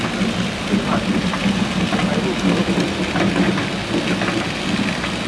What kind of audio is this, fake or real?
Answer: real